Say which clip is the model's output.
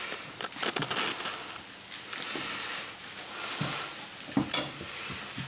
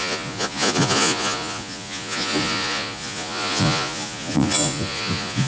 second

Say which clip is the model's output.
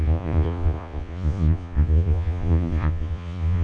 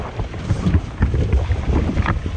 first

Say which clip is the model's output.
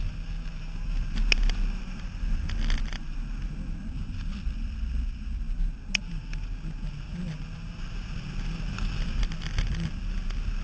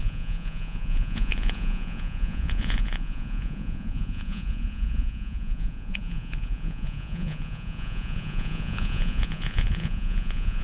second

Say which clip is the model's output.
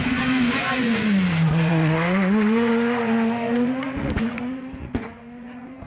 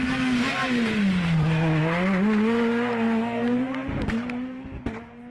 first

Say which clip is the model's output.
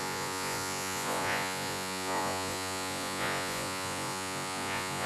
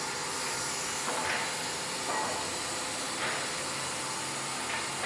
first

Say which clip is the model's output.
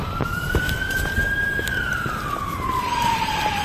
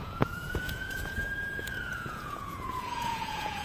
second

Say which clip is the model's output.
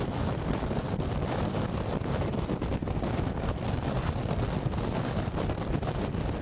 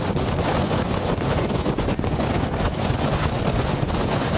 second